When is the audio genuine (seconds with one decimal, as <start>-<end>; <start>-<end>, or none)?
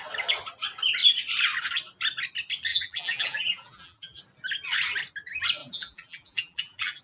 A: 0.0-2.7; 4.2-5.6